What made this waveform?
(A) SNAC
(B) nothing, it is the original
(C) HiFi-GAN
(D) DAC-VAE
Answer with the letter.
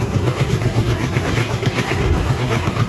A